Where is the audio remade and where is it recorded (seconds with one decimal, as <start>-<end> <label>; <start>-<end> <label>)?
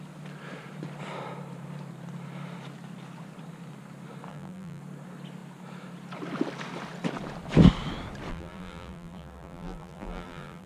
0.0-4.3 recorded; 4.3-4.8 remade; 4.8-8.3 recorded; 8.3-10.7 remade